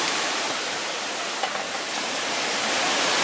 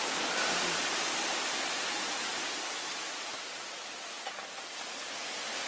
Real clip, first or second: second